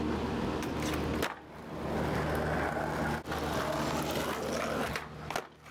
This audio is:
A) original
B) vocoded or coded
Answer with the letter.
A